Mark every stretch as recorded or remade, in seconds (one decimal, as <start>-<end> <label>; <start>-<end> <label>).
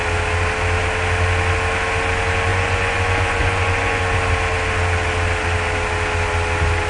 0.0-2.5 recorded; 2.5-4.0 remade; 4.0-6.9 recorded